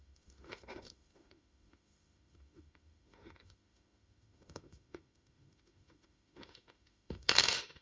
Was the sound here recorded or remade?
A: remade